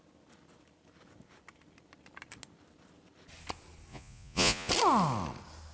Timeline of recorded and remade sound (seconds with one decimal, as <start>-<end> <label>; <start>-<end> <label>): 0.0-3.9 recorded; 3.9-4.7 remade; 4.7-5.7 recorded